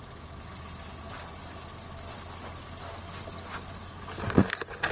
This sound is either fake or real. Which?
real